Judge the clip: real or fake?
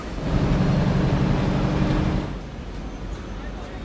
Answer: real